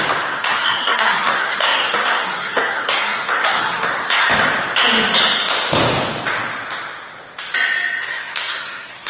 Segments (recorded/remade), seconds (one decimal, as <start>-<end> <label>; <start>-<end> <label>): 0.0-0.4 recorded; 0.4-4.2 remade; 4.2-8.0 recorded; 8.0-9.1 remade